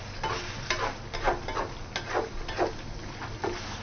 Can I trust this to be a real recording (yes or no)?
yes